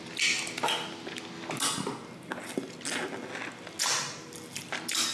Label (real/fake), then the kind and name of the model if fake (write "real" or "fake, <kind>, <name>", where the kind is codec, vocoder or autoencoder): real